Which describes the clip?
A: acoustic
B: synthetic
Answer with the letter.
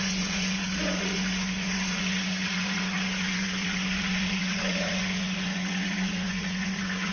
B